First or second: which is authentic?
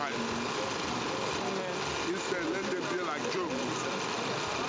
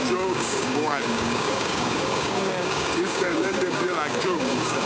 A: first